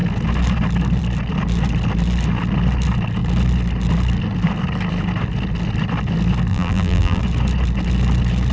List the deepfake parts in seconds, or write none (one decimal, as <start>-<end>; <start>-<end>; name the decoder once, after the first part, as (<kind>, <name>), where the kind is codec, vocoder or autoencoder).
6.5-7.2 (vocoder, BigVGAN v2)